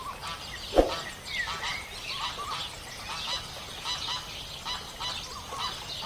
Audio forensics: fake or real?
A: real